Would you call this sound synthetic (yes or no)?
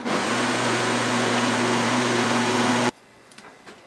yes